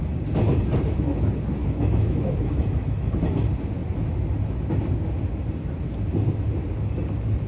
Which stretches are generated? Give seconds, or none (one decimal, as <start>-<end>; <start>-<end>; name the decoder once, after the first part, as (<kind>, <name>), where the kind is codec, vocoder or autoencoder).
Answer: 1.6-3.1 (autoencoder, DAC-VAE)